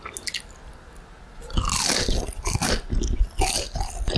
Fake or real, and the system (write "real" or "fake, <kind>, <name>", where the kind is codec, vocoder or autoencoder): real